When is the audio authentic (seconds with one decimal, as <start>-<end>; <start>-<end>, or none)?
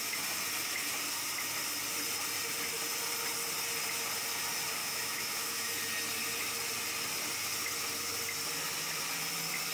0.0-4.8; 5.7-9.7